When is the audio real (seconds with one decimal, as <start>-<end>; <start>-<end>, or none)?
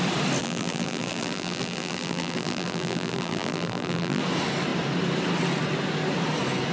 0.0-0.4; 4.2-6.7